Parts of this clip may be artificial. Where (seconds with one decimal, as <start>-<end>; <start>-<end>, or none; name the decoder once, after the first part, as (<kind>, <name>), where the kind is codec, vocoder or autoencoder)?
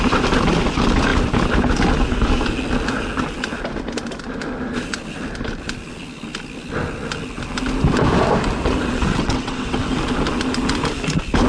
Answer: 9.1-9.8 (vocoder, WaveNeXt)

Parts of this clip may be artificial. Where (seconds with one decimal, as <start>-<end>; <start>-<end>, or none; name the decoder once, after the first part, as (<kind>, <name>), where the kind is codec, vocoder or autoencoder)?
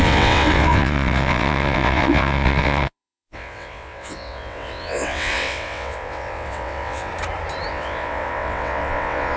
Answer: 0.0-7.1 (vocoder, WaveNeXt); 7.7-9.4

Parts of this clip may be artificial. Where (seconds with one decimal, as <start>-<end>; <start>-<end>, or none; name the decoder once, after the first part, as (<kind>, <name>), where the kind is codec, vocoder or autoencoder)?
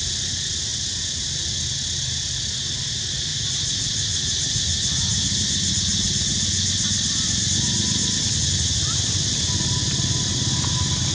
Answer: none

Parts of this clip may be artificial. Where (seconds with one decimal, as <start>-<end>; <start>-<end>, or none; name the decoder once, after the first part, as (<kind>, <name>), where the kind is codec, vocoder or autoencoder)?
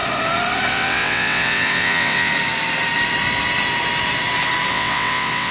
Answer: 0.7-2.3 (vocoder, WaveNeXt); 4.7-5.5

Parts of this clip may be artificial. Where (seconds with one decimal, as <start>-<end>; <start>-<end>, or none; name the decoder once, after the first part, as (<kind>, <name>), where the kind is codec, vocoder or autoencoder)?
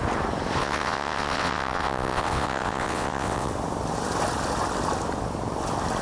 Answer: 0.6-3.5 (vocoder, WaveNeXt)